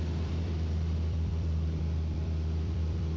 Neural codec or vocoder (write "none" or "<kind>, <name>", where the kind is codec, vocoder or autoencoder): vocoder, BigVGAN v2